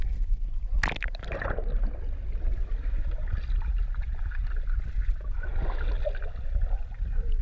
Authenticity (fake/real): real